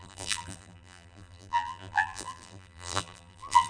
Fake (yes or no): yes